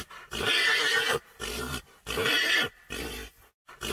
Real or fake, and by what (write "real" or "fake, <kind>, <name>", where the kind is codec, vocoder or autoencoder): real